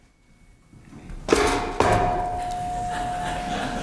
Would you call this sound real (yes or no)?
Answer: yes